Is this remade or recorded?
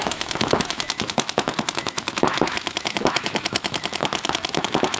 remade